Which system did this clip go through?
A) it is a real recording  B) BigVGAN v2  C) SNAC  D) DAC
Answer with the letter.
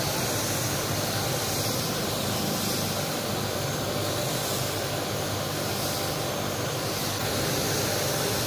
B